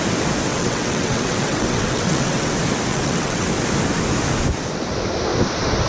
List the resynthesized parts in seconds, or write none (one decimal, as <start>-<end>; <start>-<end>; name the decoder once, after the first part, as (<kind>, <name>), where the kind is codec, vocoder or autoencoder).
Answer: 0.5-2.5 (vocoder, WaveNeXt); 2.9-3.5